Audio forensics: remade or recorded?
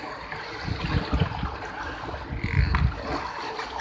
recorded